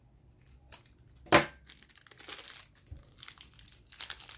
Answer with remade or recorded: recorded